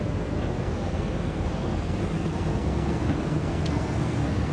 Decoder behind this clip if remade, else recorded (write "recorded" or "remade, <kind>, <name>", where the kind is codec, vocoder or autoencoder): remade, codec, SNAC